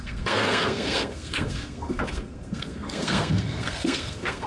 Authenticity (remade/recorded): remade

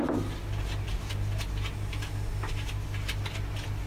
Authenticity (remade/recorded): recorded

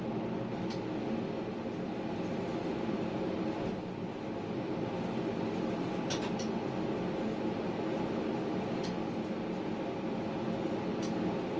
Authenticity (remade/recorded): recorded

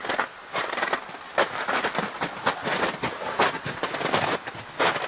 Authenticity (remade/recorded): recorded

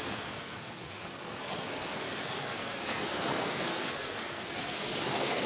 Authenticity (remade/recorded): remade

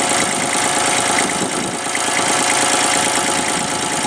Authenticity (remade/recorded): recorded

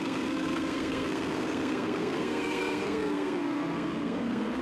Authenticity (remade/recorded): remade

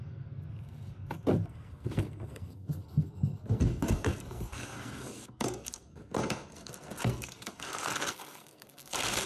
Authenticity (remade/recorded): remade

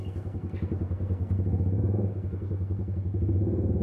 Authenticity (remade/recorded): remade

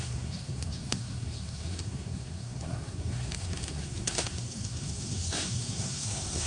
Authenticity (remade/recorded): remade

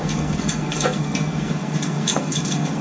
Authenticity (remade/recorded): remade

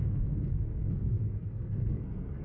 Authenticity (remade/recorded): remade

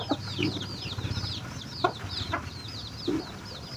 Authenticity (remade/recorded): recorded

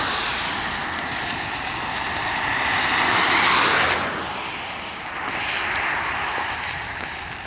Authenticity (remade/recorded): recorded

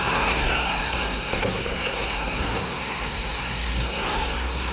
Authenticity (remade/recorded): remade